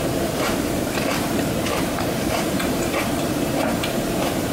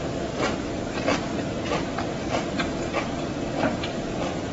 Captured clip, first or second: second